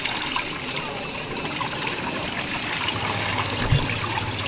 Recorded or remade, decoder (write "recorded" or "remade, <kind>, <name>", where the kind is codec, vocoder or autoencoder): recorded